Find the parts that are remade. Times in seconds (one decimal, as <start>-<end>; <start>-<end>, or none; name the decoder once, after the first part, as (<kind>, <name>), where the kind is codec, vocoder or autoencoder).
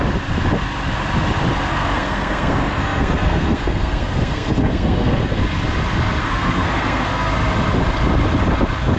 1.7-5.4 (codec, SNAC); 6.2-7.3